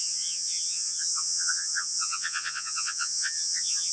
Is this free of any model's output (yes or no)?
no